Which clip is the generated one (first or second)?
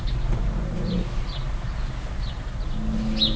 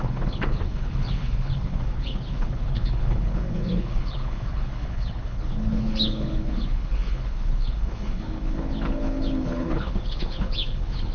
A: second